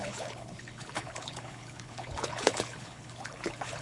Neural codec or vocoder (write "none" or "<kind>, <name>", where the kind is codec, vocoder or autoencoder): codec, HILCodec